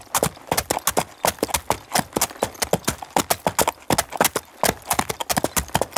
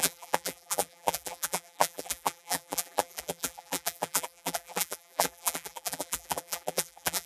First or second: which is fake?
second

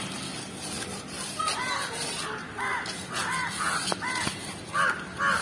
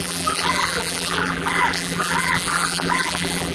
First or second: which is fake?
second